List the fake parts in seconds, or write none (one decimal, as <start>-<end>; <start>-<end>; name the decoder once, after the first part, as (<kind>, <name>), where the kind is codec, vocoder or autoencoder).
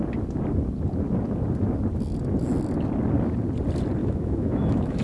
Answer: 4.0-5.0 (autoencoder, DAC-VAE)